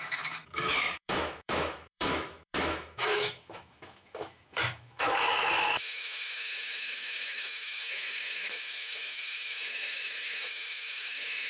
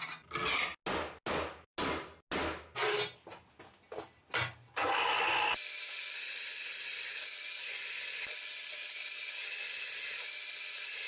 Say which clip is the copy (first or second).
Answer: first